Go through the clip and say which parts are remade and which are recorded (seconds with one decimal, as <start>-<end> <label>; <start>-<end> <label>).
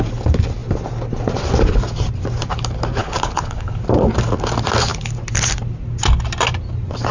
0.0-3.0 recorded; 3.0-3.8 remade; 3.8-7.1 recorded